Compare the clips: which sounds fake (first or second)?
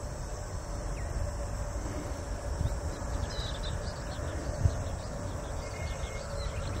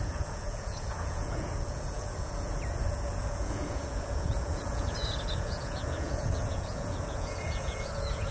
second